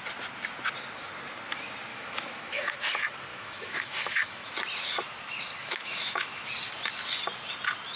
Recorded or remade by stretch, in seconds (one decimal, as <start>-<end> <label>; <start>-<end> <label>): 0.0-1.9 recorded; 1.9-2.6 remade; 2.6-3.3 recorded; 3.3-4.5 remade; 4.5-5.6 recorded; 5.6-6.5 remade; 6.5-8.0 recorded

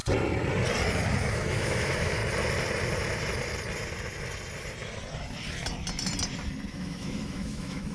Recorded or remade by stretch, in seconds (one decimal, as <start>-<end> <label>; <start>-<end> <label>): 0.0-1.3 recorded; 1.3-2.2 remade; 2.2-6.7 recorded; 6.7-7.9 remade

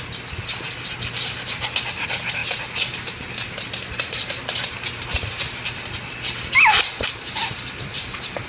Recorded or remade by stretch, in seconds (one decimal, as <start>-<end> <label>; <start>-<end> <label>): 0.0-8.5 recorded

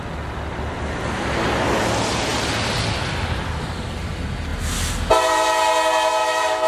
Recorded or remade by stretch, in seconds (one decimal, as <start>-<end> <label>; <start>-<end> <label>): 0.0-6.2 recorded; 6.2-6.7 remade

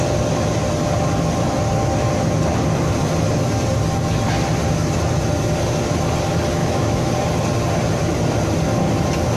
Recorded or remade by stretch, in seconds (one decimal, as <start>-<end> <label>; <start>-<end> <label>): 0.0-6.6 recorded; 6.6-7.1 remade; 7.1-9.4 recorded

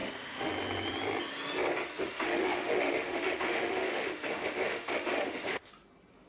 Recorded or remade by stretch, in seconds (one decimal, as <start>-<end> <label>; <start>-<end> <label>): 0.0-0.5 remade; 0.5-2.1 recorded; 2.1-5.7 remade; 5.7-6.3 recorded

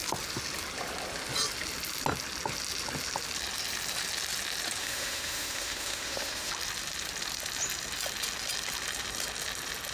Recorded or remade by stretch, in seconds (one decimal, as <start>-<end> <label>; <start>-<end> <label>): 0.0-4.8 recorded; 4.8-6.5 remade; 6.5-9.9 recorded